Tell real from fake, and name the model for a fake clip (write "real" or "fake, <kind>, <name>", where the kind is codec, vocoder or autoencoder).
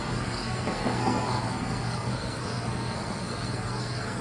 fake, codec, SNAC